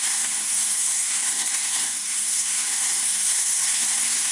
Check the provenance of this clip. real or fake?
fake